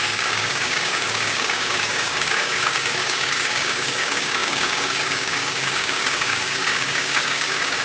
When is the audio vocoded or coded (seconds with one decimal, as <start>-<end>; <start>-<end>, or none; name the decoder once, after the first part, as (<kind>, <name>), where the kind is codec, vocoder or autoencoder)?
0.0-7.8 (codec, DAC)